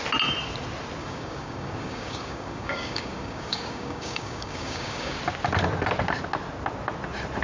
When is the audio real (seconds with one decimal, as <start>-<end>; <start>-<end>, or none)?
0.0-1.0; 5.2-7.4